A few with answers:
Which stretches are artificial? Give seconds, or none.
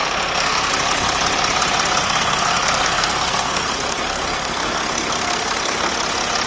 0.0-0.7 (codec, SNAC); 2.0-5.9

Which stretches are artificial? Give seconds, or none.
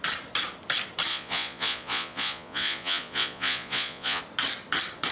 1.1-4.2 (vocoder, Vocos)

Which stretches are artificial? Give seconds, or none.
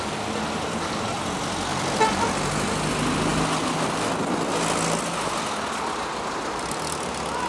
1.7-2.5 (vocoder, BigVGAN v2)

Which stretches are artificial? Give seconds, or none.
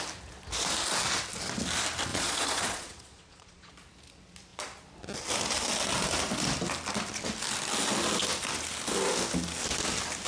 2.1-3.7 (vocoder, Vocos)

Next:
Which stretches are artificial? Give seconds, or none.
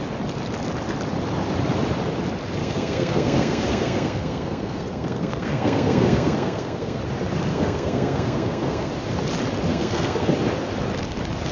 2.6-7.0 (codec, SNAC); 7.5-8.9; 9.7-10.3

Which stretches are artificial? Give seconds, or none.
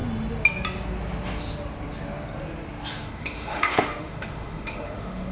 2.9-5.3 (autoencoder, DAC-VAE)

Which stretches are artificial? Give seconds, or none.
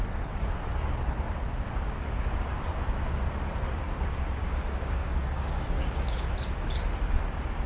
4.4-6.3 (codec, DAC)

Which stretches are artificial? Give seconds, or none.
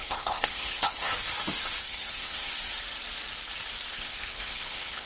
0.0-1.1 (codec, HILCodec); 1.8-2.5; 3.9-5.1